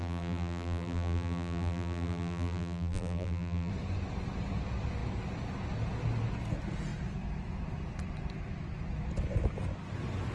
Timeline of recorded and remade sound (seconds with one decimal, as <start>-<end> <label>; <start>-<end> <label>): 0.0-3.7 remade; 3.7-10.3 recorded